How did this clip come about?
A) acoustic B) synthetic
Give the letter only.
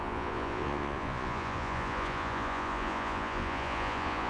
B